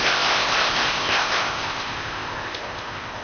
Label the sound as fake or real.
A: fake